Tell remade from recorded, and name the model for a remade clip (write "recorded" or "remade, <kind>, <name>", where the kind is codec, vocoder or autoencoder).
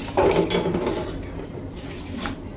recorded